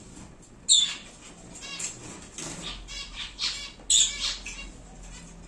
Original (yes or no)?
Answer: yes